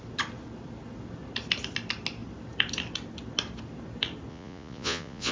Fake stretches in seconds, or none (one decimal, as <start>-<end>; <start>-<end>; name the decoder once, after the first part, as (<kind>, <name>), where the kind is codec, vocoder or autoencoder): 4.3-5.3 (vocoder, Vocos)